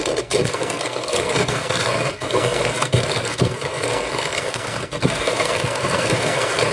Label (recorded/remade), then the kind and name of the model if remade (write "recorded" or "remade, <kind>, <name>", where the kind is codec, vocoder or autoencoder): remade, codec, SNAC